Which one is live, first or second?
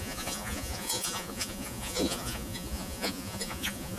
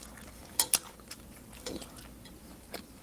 second